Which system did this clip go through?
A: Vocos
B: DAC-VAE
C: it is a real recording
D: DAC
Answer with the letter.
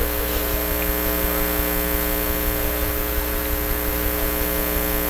C